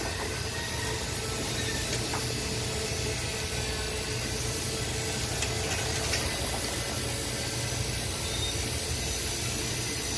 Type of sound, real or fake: real